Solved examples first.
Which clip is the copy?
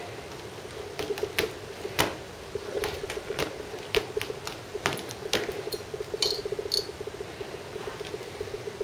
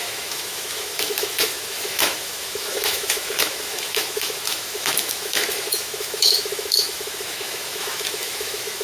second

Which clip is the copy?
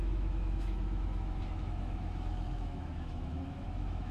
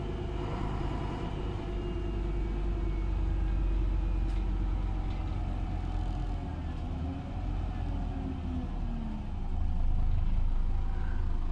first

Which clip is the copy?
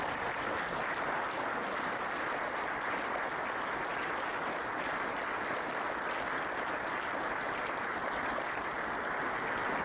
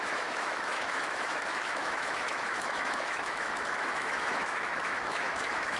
second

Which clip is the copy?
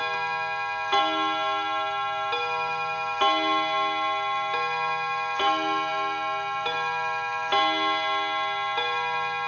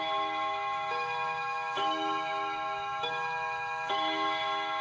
second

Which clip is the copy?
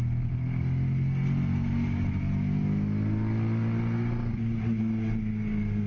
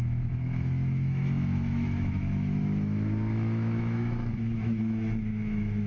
second